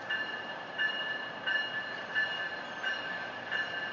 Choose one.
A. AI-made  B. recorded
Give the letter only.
B